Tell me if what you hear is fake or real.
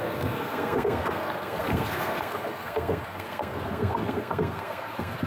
fake